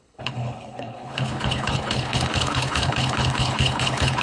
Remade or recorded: remade